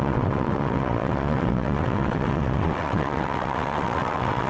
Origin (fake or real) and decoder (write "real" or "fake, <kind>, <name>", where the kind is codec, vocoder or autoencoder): fake, vocoder, WaveNeXt